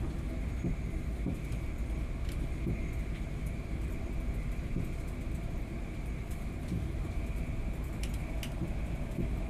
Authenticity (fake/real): real